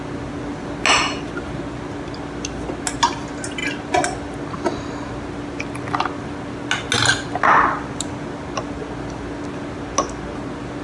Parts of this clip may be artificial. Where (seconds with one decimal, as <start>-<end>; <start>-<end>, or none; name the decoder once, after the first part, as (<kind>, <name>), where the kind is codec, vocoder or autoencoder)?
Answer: none